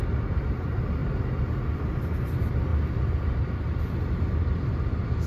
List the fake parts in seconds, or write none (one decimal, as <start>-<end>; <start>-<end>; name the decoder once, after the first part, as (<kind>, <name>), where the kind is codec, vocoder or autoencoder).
none